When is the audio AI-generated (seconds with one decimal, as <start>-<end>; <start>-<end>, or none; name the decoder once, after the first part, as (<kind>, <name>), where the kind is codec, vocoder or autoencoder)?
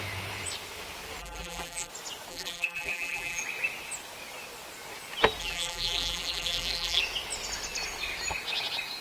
1.2-1.9 (vocoder, BigVGAN v2); 2.3-3.4; 5.4-7.0